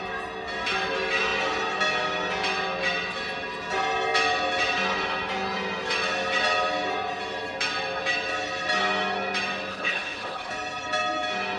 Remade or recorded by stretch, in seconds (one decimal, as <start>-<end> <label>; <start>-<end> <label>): 0.0-9.7 recorded; 9.7-10.5 remade; 10.5-11.6 recorded